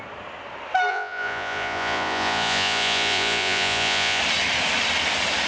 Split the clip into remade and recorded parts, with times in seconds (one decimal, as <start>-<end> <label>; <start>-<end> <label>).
0.0-0.9 recorded; 0.9-4.2 remade; 4.2-5.5 recorded